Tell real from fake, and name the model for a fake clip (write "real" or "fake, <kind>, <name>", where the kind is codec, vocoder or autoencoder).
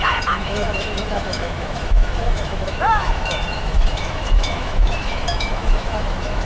fake, autoencoder, DAC-VAE